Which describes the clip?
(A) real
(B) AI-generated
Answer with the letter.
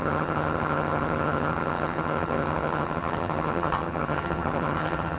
B